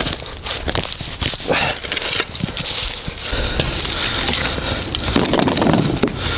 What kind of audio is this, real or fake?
real